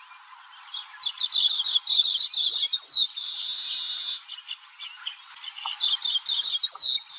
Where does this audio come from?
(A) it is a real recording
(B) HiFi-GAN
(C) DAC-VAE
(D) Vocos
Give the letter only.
A